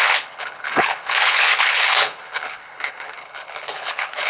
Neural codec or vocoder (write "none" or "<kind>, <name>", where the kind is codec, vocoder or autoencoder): codec, HILCodec